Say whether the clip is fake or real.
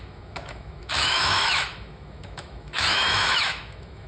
fake